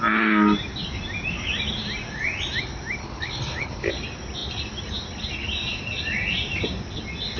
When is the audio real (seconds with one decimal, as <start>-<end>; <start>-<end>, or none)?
0.0-3.0; 3.9-7.4